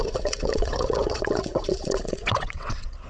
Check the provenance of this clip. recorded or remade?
remade